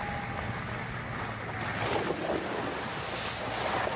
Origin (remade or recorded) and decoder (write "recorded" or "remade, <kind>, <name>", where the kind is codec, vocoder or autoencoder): recorded